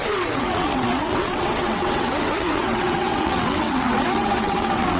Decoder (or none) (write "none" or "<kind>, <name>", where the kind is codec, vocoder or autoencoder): vocoder, WaveNeXt